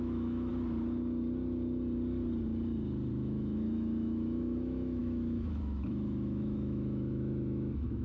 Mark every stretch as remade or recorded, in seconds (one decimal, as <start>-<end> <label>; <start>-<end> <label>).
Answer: 0.0-0.5 remade; 0.5-3.1 recorded; 3.1-8.0 remade